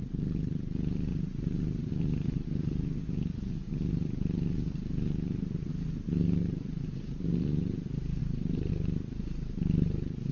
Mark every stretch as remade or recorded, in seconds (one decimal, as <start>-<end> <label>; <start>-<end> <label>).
0.0-1.1 recorded; 1.1-1.9 remade; 1.9-8.2 recorded; 8.2-8.7 remade; 8.7-10.3 recorded